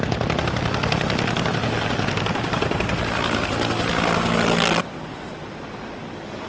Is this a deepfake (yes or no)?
no